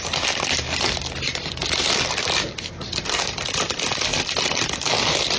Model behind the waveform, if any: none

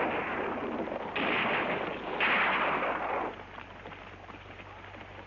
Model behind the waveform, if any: none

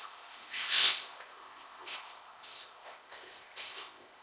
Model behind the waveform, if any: codec, ZipCodec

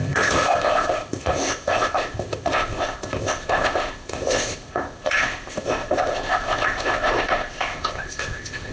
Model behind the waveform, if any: codec, ZipCodec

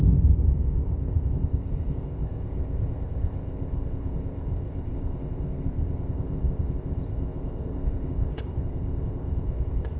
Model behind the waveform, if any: codec, ZipCodec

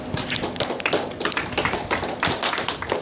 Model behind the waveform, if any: none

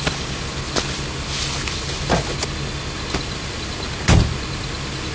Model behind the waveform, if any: none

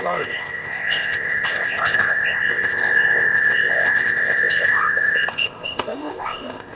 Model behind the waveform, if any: codec, ZipCodec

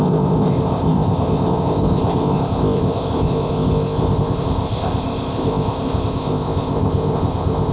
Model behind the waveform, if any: codec, ZipCodec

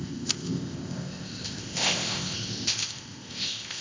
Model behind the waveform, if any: codec, ZipCodec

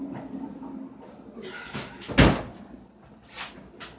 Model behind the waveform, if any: none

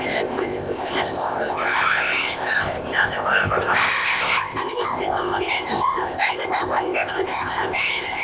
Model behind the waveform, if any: codec, ZipCodec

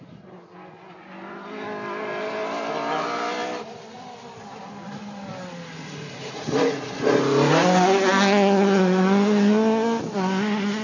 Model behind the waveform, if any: none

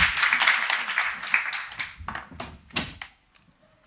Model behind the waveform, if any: none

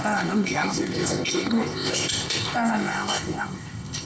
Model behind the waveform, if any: codec, ZipCodec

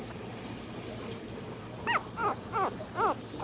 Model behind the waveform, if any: none